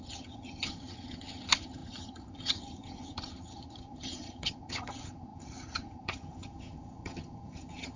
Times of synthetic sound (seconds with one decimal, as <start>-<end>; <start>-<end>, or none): 0.0-8.0